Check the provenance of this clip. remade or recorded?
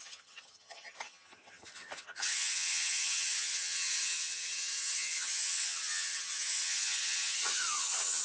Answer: remade